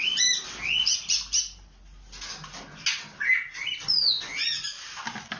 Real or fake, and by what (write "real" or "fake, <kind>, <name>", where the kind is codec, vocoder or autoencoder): real